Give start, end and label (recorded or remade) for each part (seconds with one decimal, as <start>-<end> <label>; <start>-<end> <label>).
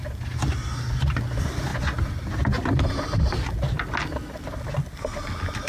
0.0-5.7 recorded